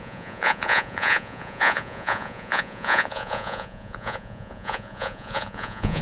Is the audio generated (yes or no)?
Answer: yes